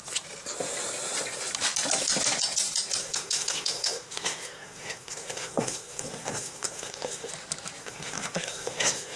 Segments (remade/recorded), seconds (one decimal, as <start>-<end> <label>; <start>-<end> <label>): 0.0-3.0 recorded; 3.0-7.3 remade; 7.3-7.8 recorded; 7.8-9.2 remade